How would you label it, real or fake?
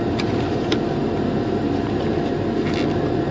real